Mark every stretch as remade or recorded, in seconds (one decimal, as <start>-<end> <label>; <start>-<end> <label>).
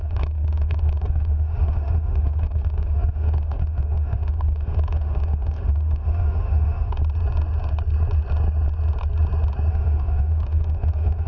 0.0-7.0 remade; 7.0-9.7 recorded; 9.7-11.3 remade